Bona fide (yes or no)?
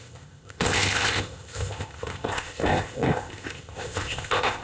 no